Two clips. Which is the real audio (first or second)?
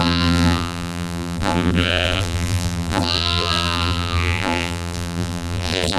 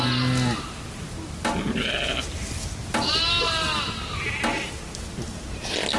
second